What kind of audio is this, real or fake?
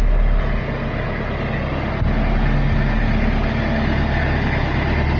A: real